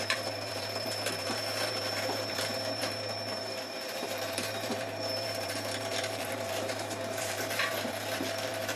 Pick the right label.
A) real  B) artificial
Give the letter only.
B